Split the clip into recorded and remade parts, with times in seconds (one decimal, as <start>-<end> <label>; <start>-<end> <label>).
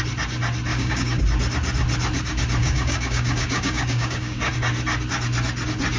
0.0-0.7 recorded; 0.7-1.2 remade; 1.2-2.6 recorded; 2.6-4.5 remade; 4.5-6.0 recorded